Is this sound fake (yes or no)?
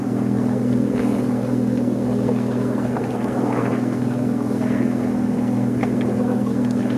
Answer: yes